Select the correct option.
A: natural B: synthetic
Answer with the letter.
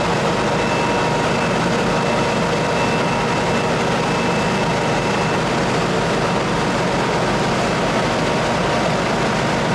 A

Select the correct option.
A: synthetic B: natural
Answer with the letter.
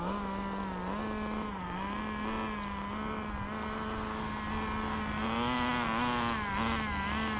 B